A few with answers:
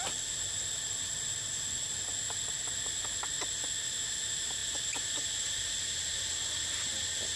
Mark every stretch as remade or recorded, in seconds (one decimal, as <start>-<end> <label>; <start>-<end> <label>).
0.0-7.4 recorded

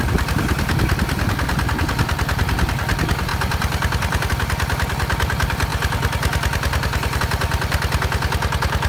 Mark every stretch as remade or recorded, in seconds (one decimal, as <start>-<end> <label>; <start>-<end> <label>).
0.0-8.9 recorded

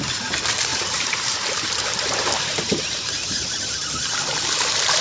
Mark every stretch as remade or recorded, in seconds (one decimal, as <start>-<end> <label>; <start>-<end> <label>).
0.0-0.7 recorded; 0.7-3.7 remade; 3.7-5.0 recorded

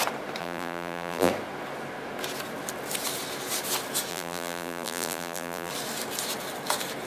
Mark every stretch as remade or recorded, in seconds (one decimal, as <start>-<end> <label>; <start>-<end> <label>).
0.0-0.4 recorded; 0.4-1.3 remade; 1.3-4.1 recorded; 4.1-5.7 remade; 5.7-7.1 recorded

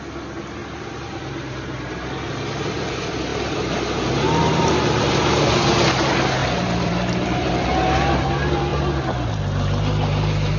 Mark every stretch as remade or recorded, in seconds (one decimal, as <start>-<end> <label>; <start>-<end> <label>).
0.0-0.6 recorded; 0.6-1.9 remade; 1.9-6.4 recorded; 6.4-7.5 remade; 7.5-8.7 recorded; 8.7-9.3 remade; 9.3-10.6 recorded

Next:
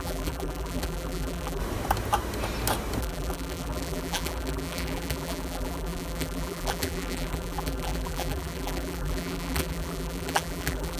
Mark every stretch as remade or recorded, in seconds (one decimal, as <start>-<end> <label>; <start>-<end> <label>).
0.0-1.6 remade; 1.6-3.0 recorded; 3.0-11.0 remade

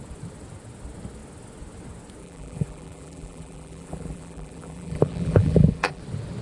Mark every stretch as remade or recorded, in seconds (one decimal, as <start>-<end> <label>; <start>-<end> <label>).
0.0-2.2 recorded; 2.2-6.0 remade; 6.0-6.4 recorded

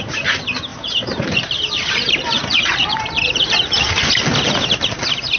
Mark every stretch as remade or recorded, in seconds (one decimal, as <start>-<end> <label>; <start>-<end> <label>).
0.0-0.7 recorded; 0.7-3.9 remade; 3.9-5.4 recorded